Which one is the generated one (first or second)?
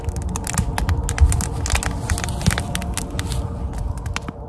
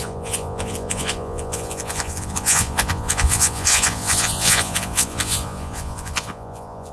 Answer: second